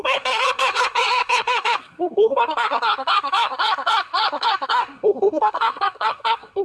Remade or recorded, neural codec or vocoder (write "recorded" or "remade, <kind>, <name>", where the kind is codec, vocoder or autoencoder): remade, codec, SNAC